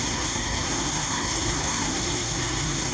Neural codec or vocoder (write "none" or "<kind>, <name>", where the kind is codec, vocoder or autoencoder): codec, SNAC